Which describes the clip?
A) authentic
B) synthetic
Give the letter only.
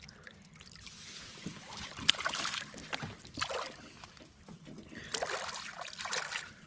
A